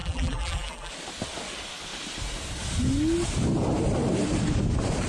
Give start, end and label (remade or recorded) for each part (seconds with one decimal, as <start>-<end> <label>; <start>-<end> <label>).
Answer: 0.0-0.9 remade; 0.9-5.1 recorded